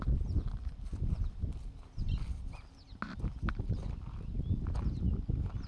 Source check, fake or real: real